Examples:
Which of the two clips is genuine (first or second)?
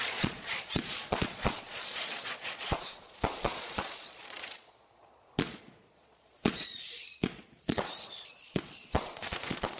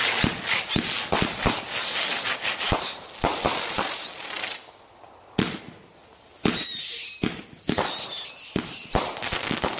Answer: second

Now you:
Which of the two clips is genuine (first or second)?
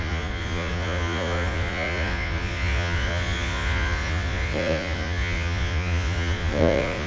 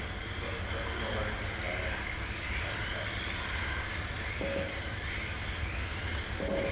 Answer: second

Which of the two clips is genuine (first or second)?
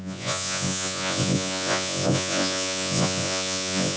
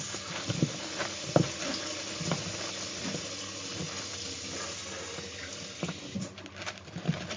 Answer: second